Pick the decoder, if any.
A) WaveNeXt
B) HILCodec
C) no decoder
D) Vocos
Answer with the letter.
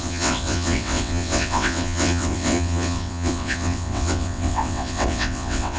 A